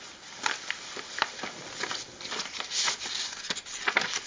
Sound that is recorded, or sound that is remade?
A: recorded